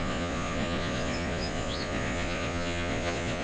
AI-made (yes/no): yes